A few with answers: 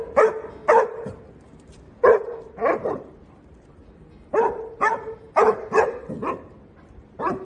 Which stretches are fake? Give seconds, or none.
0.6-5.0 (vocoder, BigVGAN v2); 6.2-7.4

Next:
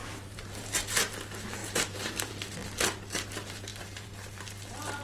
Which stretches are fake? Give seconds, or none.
0.0-0.9 (vocoder, BigVGAN v2); 1.6-2.3; 3.7-4.4

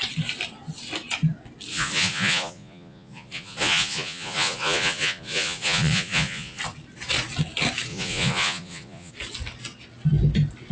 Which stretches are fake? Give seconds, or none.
1.7-6.6 (vocoder, Vocos); 7.9-9.1

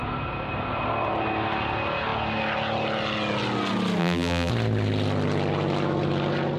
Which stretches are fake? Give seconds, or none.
4.0-4.5 (vocoder, BigVGAN v2)